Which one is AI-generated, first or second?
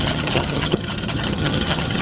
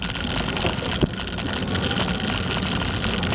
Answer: first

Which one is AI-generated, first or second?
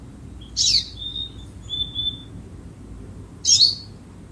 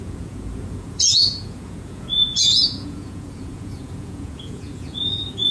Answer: second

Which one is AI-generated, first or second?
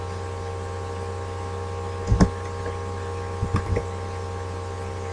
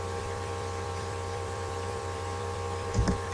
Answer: second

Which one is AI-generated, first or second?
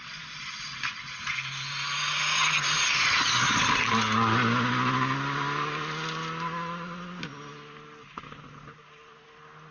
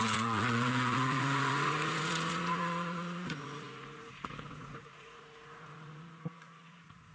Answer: second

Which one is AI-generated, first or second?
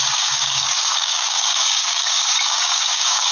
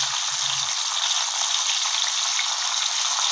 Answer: first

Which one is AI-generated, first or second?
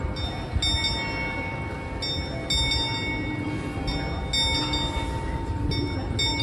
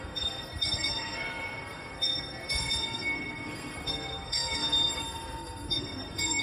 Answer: second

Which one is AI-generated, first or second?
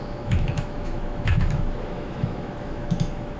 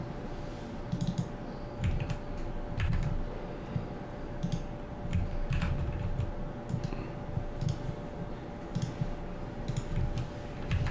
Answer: first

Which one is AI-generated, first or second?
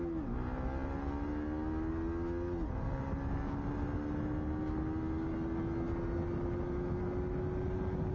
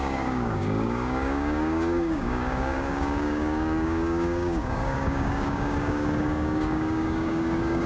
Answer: second